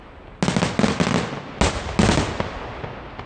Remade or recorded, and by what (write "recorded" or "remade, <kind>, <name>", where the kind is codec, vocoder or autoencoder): recorded